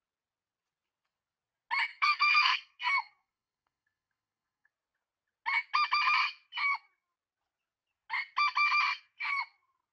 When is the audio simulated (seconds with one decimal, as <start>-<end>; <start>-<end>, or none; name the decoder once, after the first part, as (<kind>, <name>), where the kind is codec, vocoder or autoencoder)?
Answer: 1.9-4.7 (codec, SNAC)